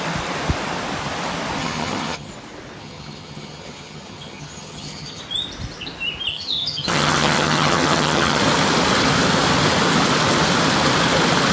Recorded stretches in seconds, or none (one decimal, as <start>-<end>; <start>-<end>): 0.0-1.6; 2.3-2.8; 5.2-6.3; 8.4-11.5